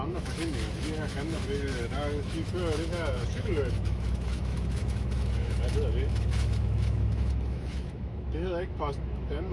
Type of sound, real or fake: fake